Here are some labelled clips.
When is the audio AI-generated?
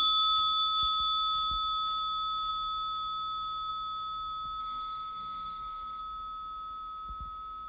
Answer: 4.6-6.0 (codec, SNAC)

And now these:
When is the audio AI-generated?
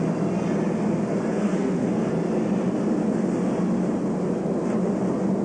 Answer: 1.3-2.1 (codec, SNAC)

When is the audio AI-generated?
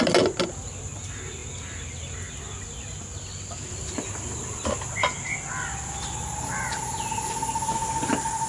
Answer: none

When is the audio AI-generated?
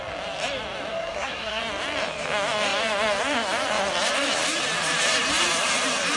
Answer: 0.9-1.6 (codec, SNAC)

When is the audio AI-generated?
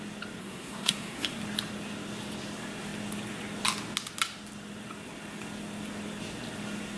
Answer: 0.4-1.4 (codec, SNAC)